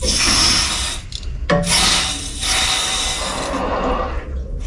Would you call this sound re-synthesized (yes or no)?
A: no